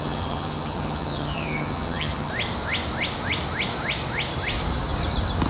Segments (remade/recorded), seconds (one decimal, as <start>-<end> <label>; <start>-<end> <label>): 0.0-2.3 remade; 2.3-5.5 recorded